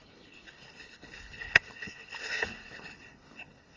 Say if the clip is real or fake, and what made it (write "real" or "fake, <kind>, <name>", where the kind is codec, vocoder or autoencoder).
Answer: fake, codec, HILCodec